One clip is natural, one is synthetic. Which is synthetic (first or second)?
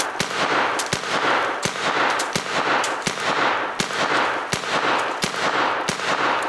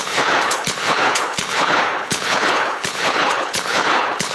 second